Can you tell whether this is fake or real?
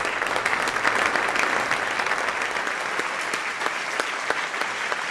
real